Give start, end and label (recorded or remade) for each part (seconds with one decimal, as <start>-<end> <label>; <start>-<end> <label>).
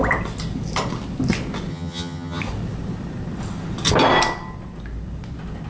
0.0-1.7 recorded; 1.7-2.4 remade; 2.4-5.7 recorded